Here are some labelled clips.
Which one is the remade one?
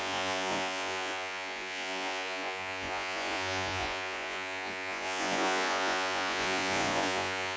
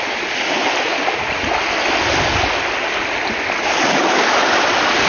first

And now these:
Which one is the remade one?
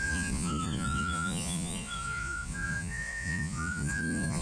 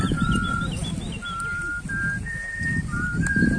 first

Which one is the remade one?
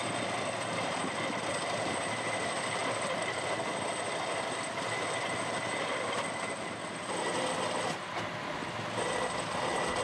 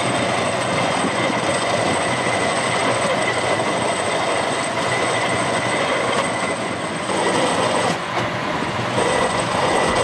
second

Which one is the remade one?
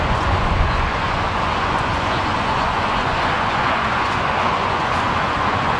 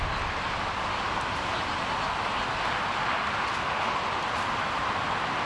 first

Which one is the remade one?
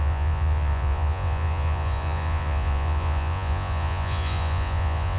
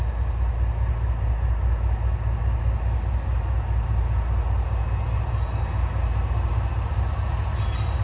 first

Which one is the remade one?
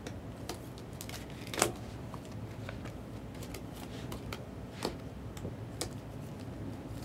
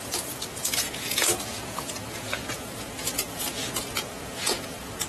second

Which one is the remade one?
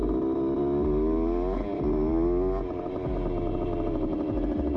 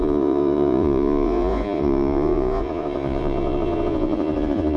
second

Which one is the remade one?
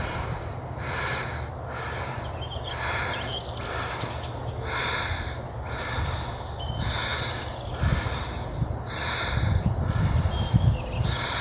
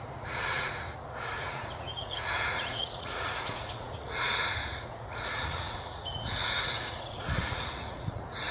second